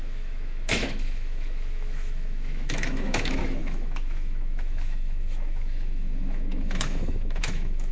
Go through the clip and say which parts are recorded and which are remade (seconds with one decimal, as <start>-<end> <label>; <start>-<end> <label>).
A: 0.0-7.9 remade